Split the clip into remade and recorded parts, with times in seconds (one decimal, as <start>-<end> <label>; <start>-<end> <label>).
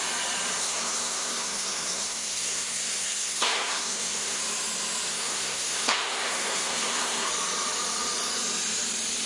0.0-0.6 recorded; 0.6-4.4 remade; 4.4-5.1 recorded; 5.1-7.3 remade; 7.3-9.3 recorded